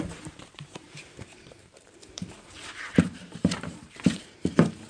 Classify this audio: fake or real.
fake